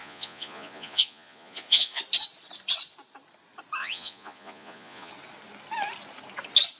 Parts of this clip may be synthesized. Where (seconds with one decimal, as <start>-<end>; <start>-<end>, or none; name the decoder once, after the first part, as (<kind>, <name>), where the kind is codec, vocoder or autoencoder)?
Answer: 0.0-2.0 (vocoder, Vocos); 3.8-5.1

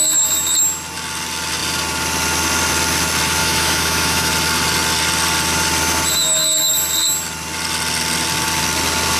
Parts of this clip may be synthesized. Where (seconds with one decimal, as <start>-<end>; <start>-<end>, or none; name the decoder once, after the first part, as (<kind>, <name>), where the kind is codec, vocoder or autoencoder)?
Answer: 3.4-4.3 (autoencoder, DAC-VAE)